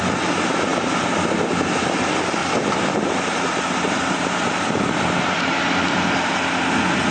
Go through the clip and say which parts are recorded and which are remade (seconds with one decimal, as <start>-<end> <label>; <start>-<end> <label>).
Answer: 0.0-0.7 recorded; 0.7-1.5 remade; 1.5-2.4 recorded; 2.4-5.6 remade; 5.6-7.1 recorded